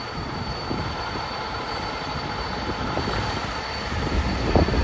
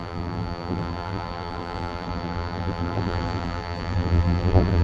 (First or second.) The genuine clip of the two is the first